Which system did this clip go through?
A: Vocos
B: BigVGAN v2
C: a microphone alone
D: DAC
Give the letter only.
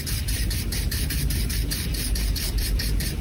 B